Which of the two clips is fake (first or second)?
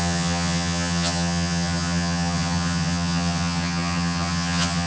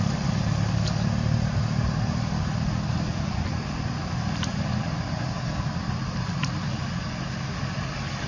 first